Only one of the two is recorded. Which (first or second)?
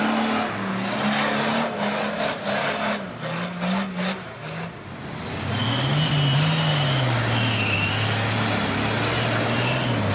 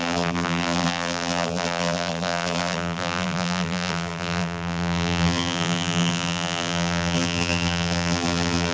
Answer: first